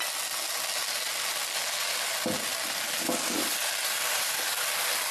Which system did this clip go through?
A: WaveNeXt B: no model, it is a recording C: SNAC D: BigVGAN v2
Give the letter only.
B